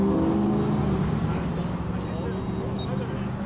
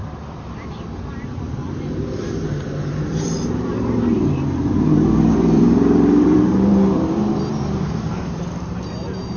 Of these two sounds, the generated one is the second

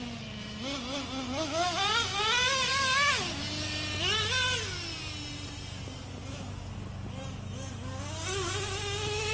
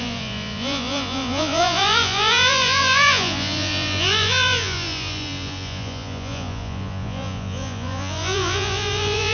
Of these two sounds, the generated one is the second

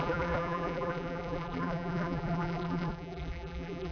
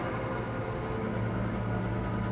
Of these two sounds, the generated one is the first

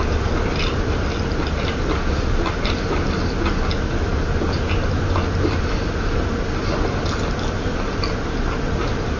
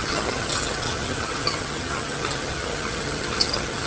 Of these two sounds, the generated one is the second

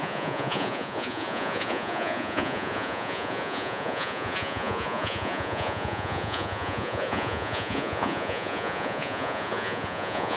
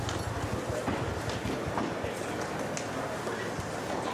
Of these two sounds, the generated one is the first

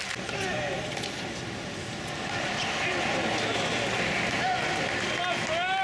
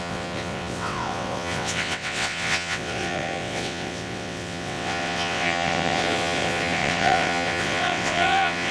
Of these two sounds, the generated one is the second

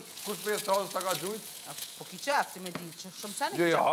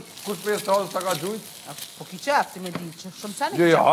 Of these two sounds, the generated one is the first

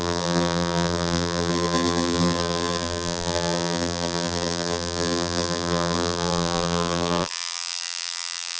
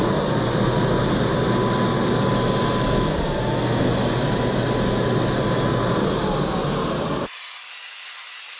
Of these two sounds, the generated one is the first